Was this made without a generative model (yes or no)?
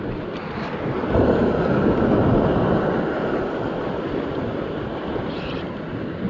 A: yes